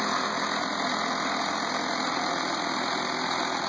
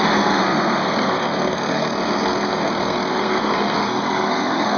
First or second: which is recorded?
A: first